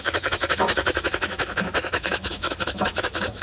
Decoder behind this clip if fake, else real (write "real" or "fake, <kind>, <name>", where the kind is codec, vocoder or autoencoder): fake, autoencoder, DAC-VAE